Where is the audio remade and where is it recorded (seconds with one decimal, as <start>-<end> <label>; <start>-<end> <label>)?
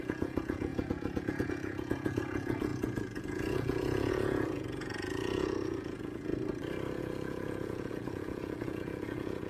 0.0-6.3 remade; 6.3-7.0 recorded; 7.0-9.5 remade